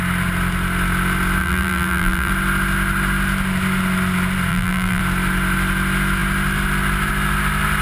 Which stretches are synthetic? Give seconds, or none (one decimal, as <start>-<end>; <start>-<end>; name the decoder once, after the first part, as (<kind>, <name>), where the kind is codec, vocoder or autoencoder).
1.4-2.3 (vocoder, BigVGAN v2); 4.5-5.0